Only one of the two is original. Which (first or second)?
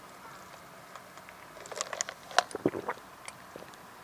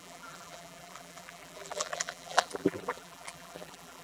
first